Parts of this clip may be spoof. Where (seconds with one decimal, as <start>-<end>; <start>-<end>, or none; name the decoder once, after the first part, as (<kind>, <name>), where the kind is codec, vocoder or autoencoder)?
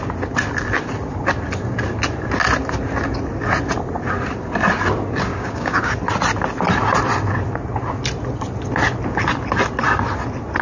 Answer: 5.3-5.9 (codec, DAC)